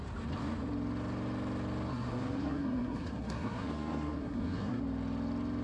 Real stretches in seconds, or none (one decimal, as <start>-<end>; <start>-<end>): 0.0-1.9; 4.8-5.6